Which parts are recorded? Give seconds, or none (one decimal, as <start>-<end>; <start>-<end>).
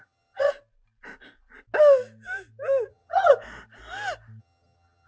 0.5-2.9; 3.3-4.4